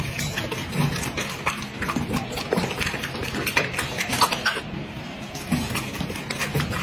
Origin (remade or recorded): recorded